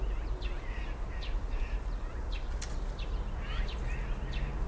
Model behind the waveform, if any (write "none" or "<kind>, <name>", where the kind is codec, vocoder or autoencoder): none